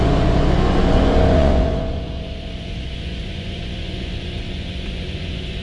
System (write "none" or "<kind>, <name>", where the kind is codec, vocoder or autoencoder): vocoder, Vocos